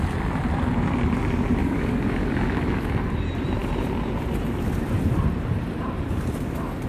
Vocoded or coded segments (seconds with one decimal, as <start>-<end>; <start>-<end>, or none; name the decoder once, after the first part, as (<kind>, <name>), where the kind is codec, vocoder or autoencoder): 1.6-2.9 (codec, DAC)